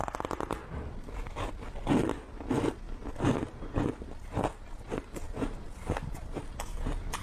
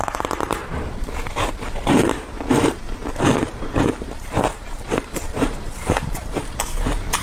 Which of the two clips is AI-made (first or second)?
second